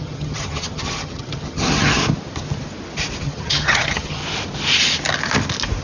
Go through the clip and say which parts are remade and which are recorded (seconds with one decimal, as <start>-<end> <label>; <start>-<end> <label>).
0.0-2.0 remade; 2.0-3.2 recorded; 3.2-4.2 remade; 4.2-5.8 recorded